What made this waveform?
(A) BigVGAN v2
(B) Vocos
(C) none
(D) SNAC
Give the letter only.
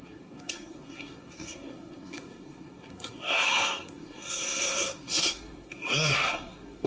D